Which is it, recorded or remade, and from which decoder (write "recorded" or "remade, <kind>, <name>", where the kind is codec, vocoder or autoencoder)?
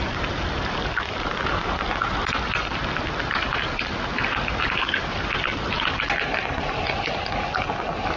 recorded